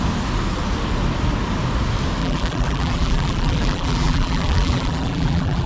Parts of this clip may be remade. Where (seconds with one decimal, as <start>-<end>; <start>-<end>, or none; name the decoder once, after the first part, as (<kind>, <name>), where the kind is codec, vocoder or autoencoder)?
2.2-5.7 (vocoder, BigVGAN v2)